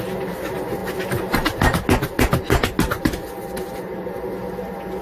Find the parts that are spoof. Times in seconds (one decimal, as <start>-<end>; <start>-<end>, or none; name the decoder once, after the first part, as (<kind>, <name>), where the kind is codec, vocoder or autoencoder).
none